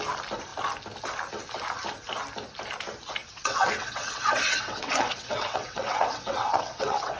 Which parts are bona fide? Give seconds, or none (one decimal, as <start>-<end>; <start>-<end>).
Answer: 0.0-3.2